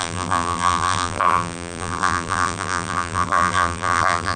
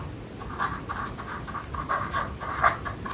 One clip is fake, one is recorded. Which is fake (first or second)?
first